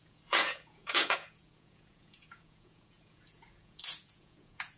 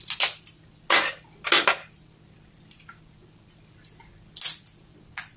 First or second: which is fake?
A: first